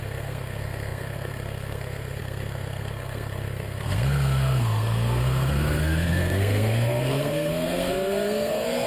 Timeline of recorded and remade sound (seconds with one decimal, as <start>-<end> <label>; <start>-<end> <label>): 0.0-8.9 remade